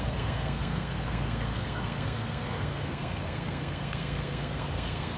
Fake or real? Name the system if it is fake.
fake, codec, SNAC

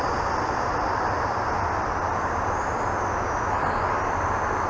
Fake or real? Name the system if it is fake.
real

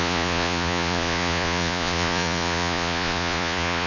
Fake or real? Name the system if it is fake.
fake, vocoder, Vocos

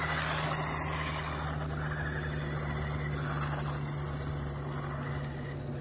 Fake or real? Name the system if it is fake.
real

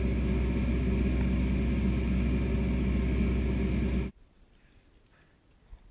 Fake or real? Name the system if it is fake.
real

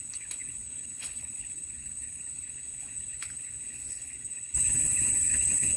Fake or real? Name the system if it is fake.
fake, codec, HILCodec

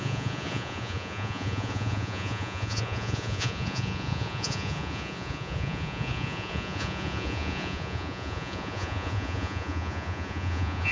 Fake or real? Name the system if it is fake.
fake, vocoder, Vocos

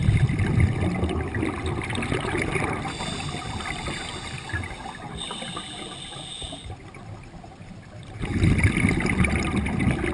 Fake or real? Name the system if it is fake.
real